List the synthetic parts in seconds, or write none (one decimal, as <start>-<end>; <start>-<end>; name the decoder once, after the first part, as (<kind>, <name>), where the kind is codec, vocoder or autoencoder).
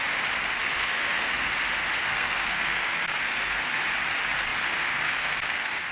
0.6-1.5 (codec, SNAC); 2.1-3.8; 4.6-5.9